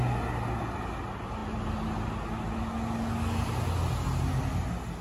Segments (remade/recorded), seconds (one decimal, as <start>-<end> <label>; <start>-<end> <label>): 0.0-5.0 recorded